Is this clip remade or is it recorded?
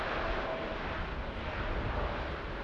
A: recorded